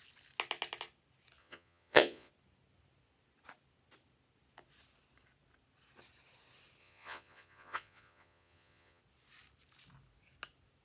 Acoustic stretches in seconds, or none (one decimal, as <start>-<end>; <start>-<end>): 0.0-1.4; 2.3-6.8; 9.0-10.8